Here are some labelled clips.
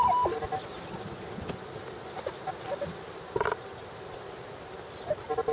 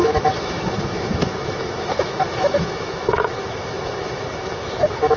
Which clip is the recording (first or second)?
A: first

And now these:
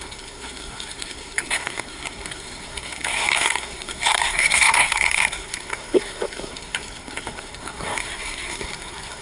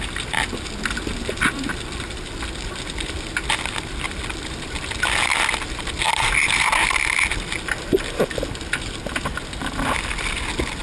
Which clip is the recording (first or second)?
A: second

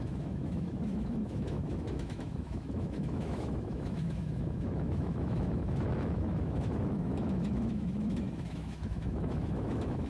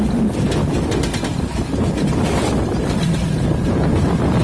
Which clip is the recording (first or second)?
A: second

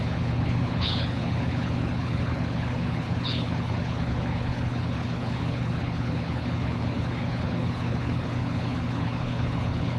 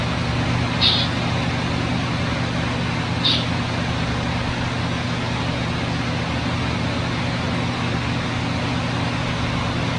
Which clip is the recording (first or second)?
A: second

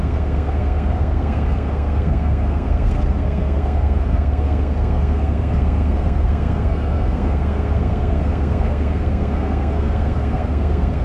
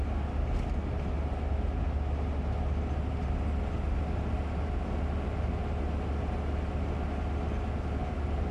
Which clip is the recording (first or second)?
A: second